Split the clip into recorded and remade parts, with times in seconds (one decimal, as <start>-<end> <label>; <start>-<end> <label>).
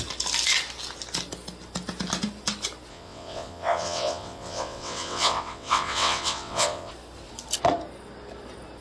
0.0-2.9 recorded; 2.9-6.9 remade; 6.9-8.8 recorded